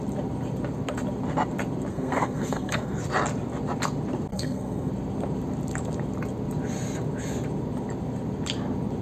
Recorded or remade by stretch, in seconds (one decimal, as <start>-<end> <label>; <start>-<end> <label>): 0.0-1.9 recorded; 1.9-3.0 remade; 3.0-4.3 recorded; 4.3-4.9 remade; 4.9-9.0 recorded